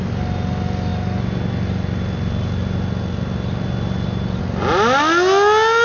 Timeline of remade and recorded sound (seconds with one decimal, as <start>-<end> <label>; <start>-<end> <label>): 0.0-5.8 recorded